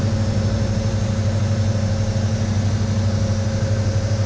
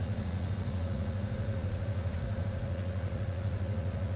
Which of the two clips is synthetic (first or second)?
second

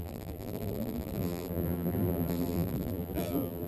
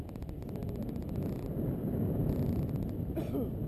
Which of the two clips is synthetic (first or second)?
first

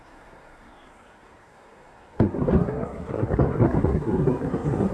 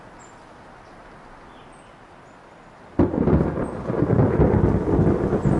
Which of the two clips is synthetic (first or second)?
first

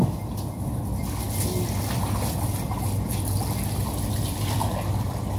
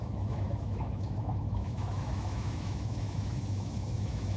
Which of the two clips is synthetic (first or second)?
second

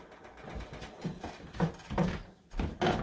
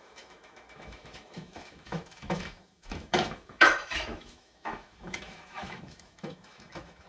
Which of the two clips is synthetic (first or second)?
second